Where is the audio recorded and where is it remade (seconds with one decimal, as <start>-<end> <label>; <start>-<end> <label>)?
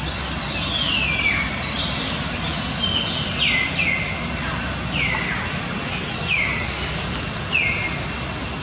0.0-8.6 recorded